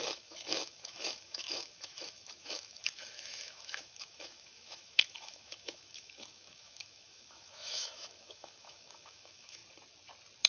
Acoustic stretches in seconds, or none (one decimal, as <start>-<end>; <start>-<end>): 9.6-10.5